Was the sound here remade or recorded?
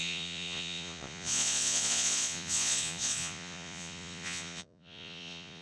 remade